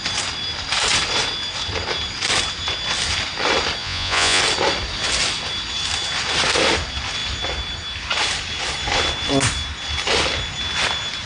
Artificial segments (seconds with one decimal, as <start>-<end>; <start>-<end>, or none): 3.8-4.4